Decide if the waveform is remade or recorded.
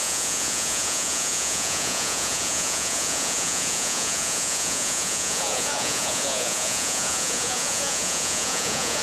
remade